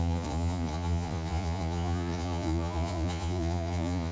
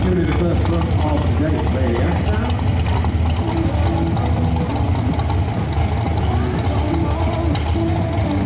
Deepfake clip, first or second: first